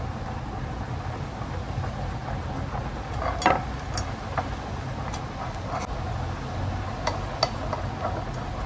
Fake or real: real